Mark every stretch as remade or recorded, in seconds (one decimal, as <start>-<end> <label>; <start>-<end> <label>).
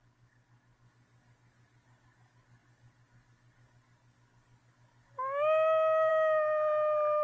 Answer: 0.0-7.2 recorded